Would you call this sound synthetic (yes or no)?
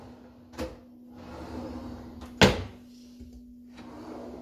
no